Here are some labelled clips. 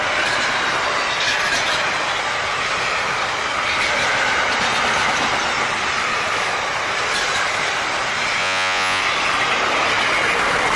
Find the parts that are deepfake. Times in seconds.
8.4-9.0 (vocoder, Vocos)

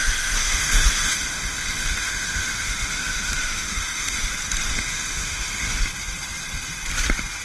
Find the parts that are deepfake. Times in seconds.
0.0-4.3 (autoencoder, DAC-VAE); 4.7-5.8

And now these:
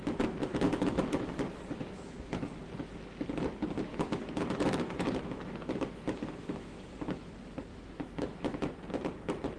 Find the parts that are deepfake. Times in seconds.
0.4-2.5 (autoencoder, DAC-VAE); 3.9-7.3; 7.7-8.7

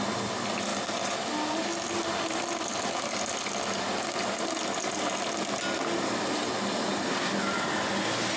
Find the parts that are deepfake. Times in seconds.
none